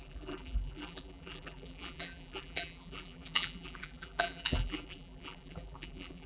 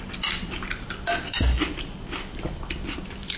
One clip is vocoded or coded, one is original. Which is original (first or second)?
second